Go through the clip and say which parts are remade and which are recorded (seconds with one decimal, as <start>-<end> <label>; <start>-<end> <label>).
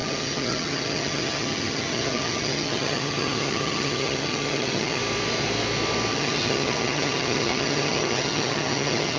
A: 0.0-5.0 remade; 5.0-6.1 recorded; 6.1-9.2 remade